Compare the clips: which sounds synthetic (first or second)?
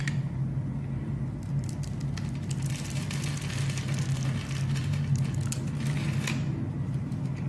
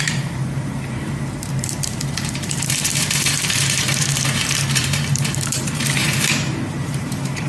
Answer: second